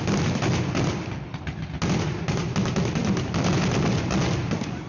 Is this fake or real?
real